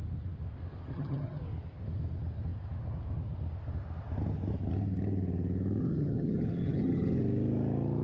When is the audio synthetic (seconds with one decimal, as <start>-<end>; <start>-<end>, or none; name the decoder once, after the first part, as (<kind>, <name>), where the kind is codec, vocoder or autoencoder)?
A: 0.9-1.4 (vocoder, HiFi-GAN); 5.8-7.2